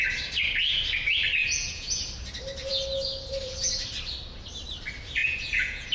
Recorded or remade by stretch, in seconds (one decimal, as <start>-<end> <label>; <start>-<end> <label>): 0.0-1.4 recorded; 1.4-2.0 remade; 2.0-5.2 recorded; 5.2-5.9 remade